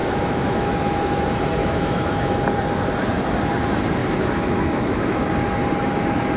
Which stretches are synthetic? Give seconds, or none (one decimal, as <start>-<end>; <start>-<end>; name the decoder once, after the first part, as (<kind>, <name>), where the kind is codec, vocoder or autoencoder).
0.0-1.2 (autoencoder, DAC-VAE); 1.6-2.3; 4.0-5.2